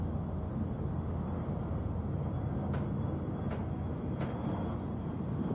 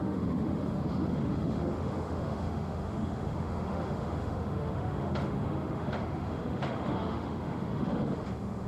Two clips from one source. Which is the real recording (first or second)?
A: first